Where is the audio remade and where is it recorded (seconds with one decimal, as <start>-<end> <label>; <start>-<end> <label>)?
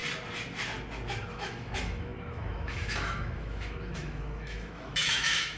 0.0-1.3 recorded; 1.3-5.6 remade